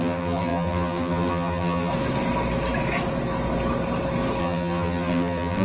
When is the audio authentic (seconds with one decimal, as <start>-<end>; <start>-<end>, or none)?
1.9-4.4